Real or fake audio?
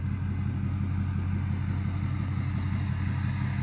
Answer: real